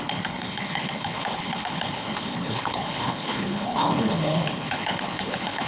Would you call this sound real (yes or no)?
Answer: no